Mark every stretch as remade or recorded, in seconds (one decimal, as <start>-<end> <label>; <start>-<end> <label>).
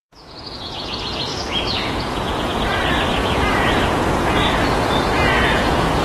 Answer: 0.0-6.0 remade